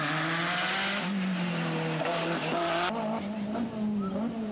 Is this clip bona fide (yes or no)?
yes